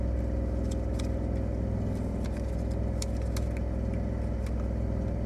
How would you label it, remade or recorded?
recorded